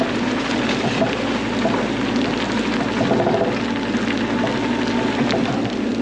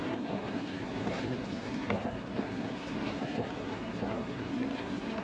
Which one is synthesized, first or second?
second